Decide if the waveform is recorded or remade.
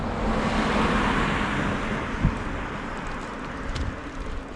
recorded